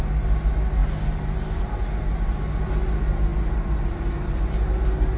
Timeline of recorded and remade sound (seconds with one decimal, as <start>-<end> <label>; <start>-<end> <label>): 0.0-5.2 recorded